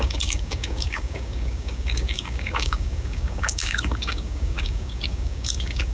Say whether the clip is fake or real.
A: fake